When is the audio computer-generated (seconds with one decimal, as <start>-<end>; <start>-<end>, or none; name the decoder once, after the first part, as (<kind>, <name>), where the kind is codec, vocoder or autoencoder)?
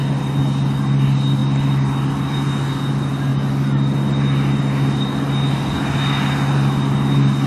none